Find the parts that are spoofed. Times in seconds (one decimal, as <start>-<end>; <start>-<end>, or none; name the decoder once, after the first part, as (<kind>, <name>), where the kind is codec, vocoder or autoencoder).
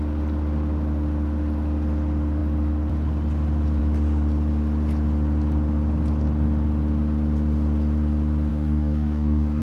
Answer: 8.5-9.6 (codec, DAC)